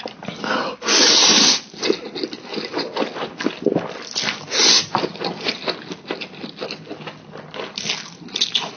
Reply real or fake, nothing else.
real